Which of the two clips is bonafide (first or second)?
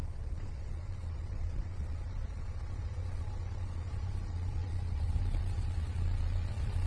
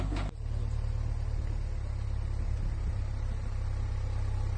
second